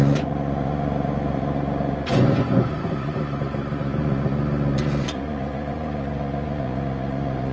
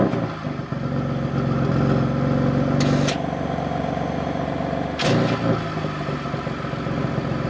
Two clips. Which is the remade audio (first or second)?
first